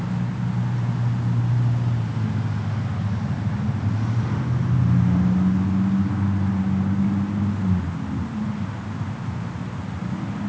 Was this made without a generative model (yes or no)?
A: yes